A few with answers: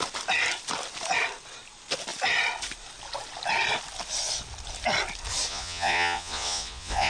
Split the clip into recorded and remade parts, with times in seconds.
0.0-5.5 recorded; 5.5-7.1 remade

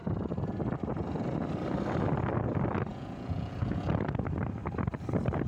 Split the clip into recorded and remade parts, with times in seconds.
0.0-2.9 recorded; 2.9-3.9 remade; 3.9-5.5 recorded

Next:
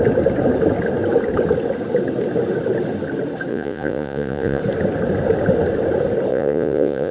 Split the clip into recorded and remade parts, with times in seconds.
0.0-3.5 recorded; 3.5-4.6 remade; 4.6-6.3 recorded; 6.3-7.1 remade